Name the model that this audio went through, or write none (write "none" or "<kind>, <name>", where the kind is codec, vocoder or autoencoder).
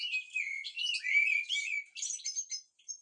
none